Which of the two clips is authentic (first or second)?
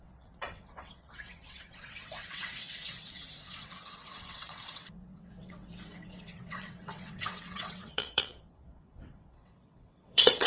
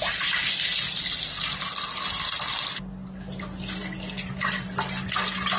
second